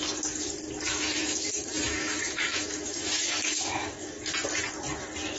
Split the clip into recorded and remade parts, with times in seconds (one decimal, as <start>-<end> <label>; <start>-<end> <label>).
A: 0.0-0.9 recorded; 0.9-4.1 remade; 4.1-5.4 recorded